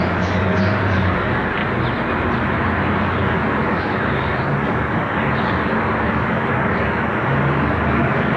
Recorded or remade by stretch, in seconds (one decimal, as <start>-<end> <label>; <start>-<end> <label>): 0.0-1.6 remade; 1.6-3.0 recorded; 3.0-8.4 remade